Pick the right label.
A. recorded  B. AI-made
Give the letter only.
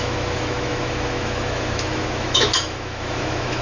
B